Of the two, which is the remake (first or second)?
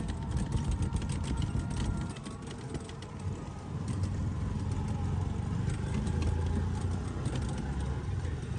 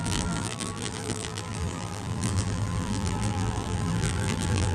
second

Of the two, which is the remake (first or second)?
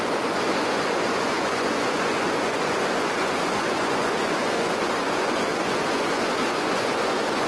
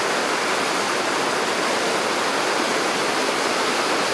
first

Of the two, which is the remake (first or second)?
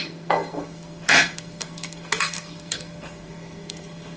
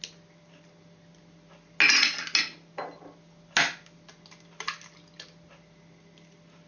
first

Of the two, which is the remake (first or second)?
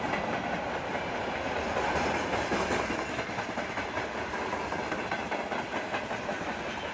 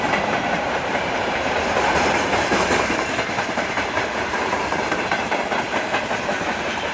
second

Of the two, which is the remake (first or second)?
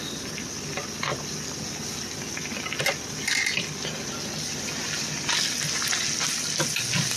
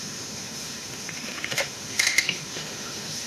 second